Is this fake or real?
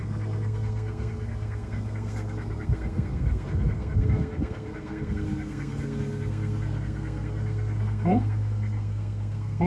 fake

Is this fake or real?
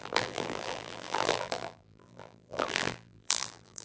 fake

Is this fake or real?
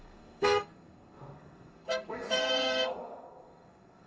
fake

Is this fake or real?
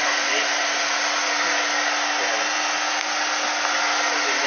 real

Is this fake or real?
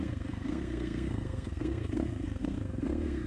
fake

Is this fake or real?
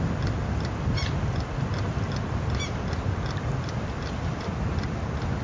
real